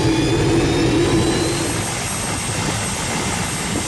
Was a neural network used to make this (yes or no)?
no